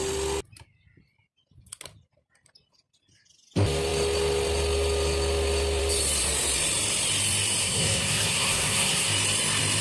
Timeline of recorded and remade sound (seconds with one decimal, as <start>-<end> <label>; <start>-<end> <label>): 0.0-7.6 recorded; 7.6-9.1 remade; 9.1-9.8 recorded